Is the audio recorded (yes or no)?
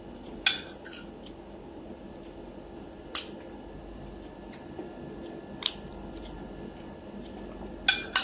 yes